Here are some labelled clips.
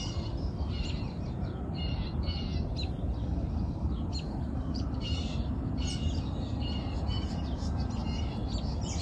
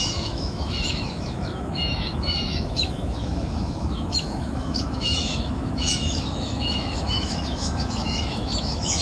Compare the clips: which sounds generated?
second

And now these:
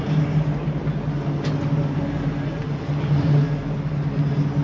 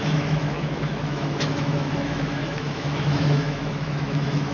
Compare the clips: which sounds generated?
second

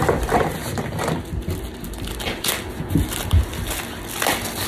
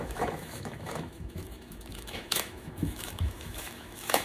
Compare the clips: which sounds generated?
second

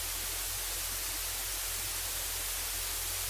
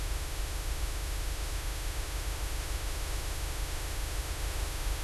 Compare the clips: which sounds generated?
second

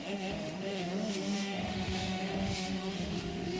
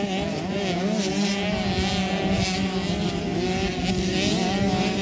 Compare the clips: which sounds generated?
first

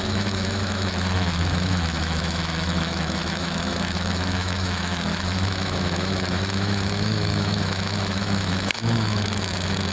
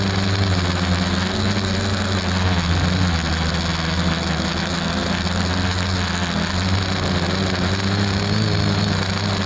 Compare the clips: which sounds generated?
first